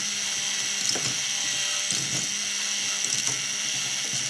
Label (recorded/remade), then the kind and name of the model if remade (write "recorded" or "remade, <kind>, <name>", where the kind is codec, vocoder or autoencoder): recorded